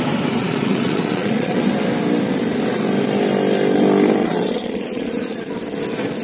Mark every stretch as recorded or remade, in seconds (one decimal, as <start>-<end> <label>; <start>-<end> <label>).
0.0-0.4 recorded; 0.4-1.7 remade; 1.7-4.2 recorded; 4.2-5.5 remade; 5.5-6.2 recorded